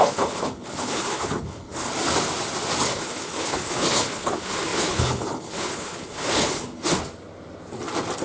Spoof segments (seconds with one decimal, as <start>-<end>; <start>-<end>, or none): 0.0-1.9; 2.8-7.0